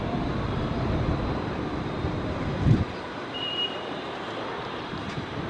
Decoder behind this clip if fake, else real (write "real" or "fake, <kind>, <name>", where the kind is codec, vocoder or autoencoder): fake, vocoder, BigVGAN v2